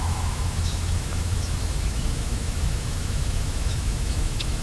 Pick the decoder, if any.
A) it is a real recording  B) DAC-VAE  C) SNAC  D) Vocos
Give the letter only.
B